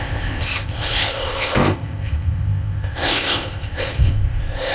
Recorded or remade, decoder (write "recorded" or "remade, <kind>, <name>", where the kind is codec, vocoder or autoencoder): remade, codec, ZipCodec